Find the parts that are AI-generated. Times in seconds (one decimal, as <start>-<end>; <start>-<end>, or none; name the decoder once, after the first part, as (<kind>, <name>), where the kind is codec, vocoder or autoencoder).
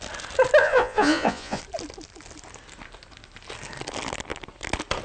0.6-1.6 (vocoder, Vocos)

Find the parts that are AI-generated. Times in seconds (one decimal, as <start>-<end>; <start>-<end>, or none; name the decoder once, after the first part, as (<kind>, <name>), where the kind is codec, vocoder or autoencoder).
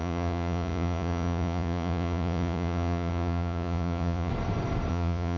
0.0-4.3 (vocoder, Vocos); 4.9-5.4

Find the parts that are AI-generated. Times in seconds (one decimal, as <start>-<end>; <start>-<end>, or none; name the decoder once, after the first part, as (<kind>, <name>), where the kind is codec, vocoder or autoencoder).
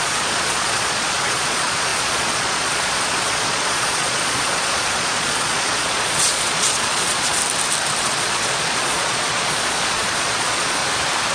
0.0-7.4 (vocoder, Vocos); 8.0-10.8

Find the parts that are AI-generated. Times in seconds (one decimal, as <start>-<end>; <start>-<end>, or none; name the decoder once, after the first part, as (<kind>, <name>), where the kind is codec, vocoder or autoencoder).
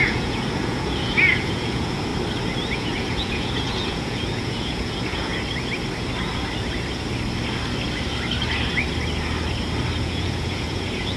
0.0-2.1 (vocoder, Vocos); 2.7-5.3; 10.0-11.2